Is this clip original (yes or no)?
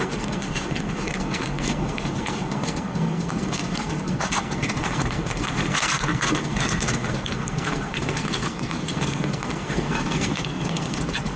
no